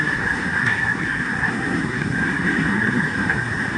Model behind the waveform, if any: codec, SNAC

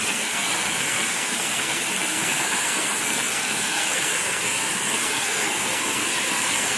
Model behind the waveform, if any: codec, SNAC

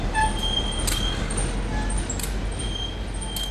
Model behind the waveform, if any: none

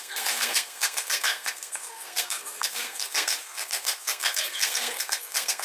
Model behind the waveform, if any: codec, SNAC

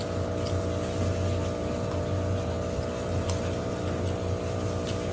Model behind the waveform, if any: none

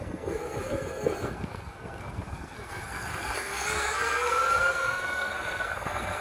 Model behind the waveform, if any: codec, SNAC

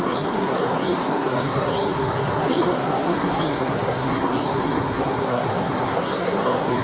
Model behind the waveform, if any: codec, SNAC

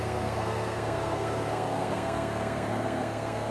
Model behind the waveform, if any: codec, SNAC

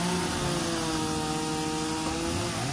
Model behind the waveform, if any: none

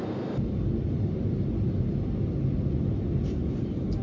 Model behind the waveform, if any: none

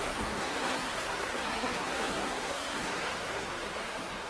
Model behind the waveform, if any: codec, SNAC